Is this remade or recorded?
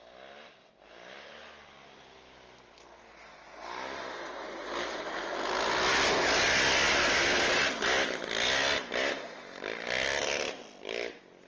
recorded